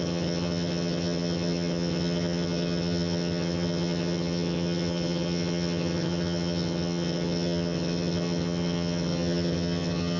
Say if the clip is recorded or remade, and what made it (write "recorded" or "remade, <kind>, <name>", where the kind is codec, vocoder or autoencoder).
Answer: remade, vocoder, HiFi-GAN